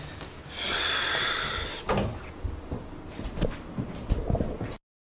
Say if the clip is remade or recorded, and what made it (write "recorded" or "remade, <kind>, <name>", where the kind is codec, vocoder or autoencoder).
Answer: recorded